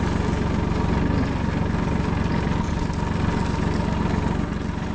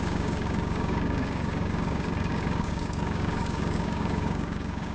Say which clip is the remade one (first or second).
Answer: second